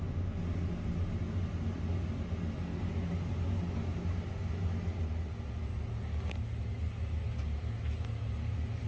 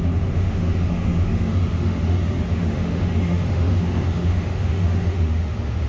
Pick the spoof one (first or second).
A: second